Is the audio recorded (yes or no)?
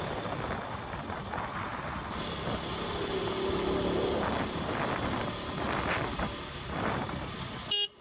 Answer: yes